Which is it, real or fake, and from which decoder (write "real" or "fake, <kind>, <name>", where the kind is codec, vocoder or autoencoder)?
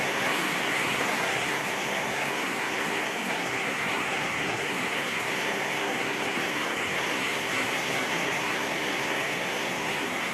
fake, codec, SNAC